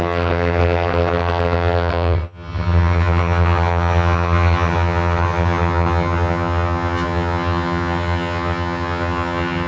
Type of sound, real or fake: fake